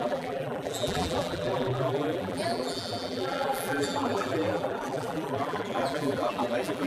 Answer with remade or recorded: remade